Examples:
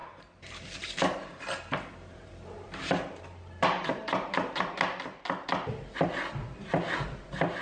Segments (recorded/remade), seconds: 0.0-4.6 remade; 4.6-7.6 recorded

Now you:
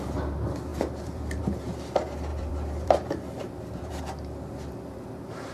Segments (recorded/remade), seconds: 0.0-0.7 recorded; 0.7-1.4 remade; 1.4-2.3 recorded; 2.3-4.0 remade; 4.0-5.5 recorded

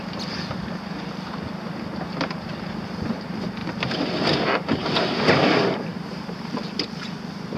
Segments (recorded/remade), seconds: 0.0-7.6 remade

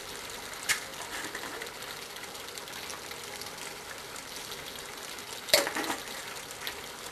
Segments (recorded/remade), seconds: 0.0-7.1 recorded

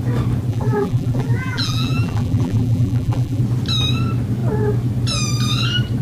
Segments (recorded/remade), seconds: 0.0-0.5 recorded; 0.5-3.4 remade; 3.4-6.0 recorded

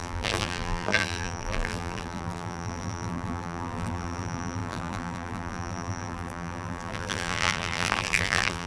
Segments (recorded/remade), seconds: 0.0-8.7 remade

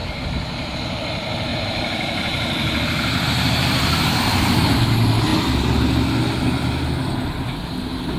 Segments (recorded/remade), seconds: 0.0-0.7 remade; 0.7-1.5 recorded; 1.5-4.6 remade; 4.6-8.2 recorded

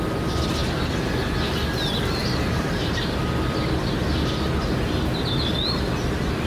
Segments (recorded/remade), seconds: 0.0-6.5 recorded